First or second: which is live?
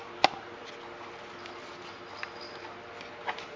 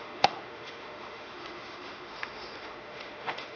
first